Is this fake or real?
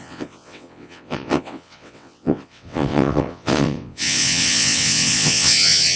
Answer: fake